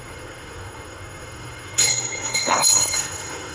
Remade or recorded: remade